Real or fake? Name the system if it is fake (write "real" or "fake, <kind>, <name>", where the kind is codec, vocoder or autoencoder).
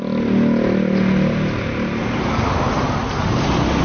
real